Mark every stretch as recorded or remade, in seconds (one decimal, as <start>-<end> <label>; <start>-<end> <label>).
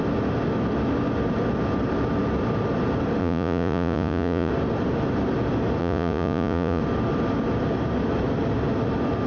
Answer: 0.0-3.2 recorded; 3.2-4.5 remade; 4.5-5.8 recorded; 5.8-6.8 remade; 6.8-9.3 recorded